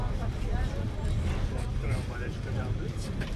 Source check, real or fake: fake